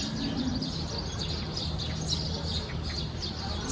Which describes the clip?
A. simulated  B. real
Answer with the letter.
B